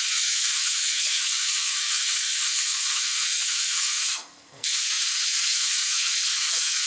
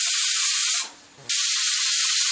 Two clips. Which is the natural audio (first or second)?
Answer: second